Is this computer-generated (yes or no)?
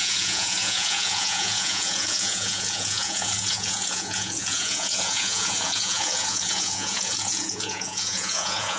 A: yes